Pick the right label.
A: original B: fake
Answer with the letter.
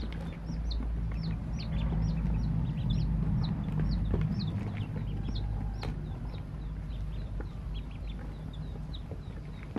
A